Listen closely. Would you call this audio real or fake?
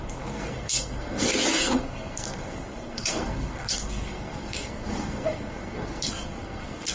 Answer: fake